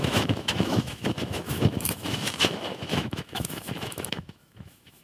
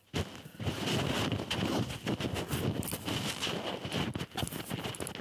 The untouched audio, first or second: second